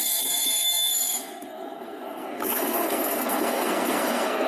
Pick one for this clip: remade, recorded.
remade